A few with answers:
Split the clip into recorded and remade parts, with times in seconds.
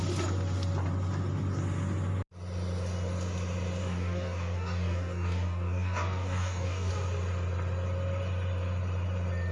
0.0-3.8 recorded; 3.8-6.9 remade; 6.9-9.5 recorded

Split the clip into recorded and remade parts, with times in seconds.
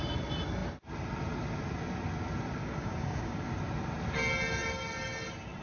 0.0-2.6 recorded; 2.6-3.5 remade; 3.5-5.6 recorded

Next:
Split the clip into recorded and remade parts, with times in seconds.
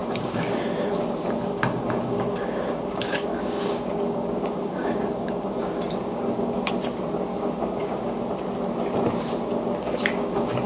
0.0-1.0 remade; 1.0-1.5 recorded; 1.5-6.7 remade; 6.7-7.3 recorded; 7.3-8.2 remade; 8.2-9.8 recorded; 9.8-10.7 remade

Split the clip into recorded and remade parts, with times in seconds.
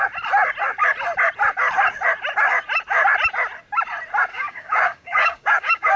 0.0-4.3 recorded; 4.3-6.0 remade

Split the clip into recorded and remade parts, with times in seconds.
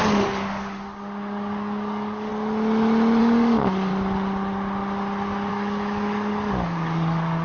0.0-2.3 remade; 2.3-3.2 recorded; 3.2-3.9 remade; 3.9-5.5 recorded; 5.5-7.4 remade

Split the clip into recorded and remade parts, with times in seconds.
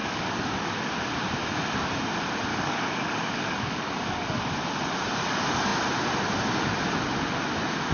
0.0-0.9 remade; 0.9-2.5 recorded; 2.5-4.4 remade; 4.4-7.9 recorded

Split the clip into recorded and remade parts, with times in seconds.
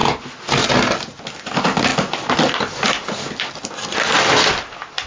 0.0-5.1 recorded